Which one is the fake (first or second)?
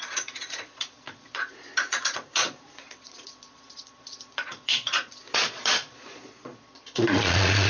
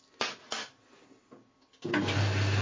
first